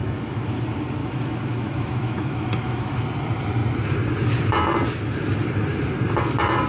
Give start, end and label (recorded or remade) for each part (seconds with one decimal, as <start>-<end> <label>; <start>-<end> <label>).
0.0-0.6 remade; 0.6-1.0 recorded; 1.0-3.0 remade; 3.0-6.7 recorded